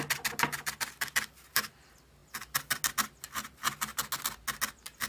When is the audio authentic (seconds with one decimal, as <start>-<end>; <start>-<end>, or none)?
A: 0.0-5.1